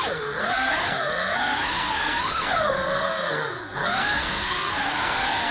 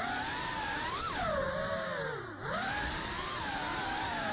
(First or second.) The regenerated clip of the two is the first